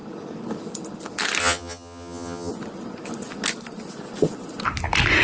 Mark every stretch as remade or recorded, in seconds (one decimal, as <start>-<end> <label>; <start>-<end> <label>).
0.0-1.4 recorded; 1.4-2.5 remade; 2.5-5.2 recorded